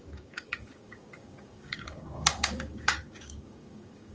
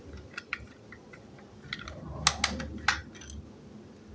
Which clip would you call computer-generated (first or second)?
first